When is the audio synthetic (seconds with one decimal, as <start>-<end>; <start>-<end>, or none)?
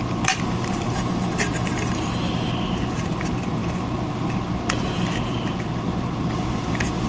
none